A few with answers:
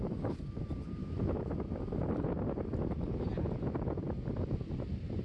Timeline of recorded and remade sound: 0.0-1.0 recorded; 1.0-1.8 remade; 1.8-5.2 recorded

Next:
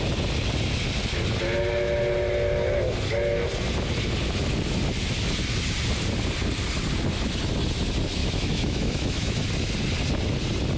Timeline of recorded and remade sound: 0.0-8.2 recorded; 8.2-9.4 remade; 9.4-10.8 recorded

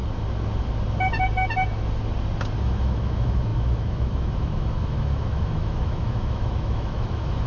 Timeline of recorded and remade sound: 0.0-2.6 recorded; 2.6-7.5 remade

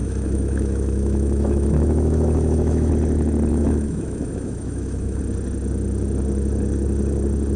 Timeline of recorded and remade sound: 0.0-2.9 remade; 2.9-3.5 recorded; 3.5-5.2 remade; 5.2-7.6 recorded

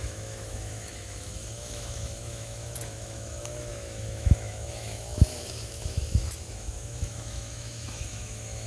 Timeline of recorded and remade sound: 0.0-8.7 remade

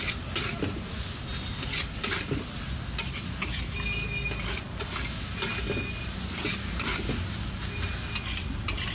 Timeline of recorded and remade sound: 0.0-8.9 recorded

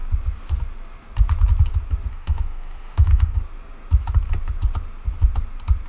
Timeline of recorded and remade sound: 0.0-2.1 recorded; 2.1-3.4 remade; 3.4-5.9 recorded